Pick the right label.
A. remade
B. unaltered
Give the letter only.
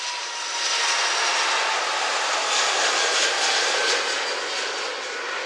B